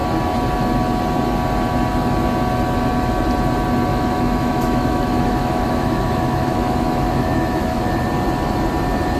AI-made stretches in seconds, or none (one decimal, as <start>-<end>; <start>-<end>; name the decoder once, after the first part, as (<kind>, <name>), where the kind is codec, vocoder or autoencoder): 3.9-7.9 (autoencoder, DAC-VAE)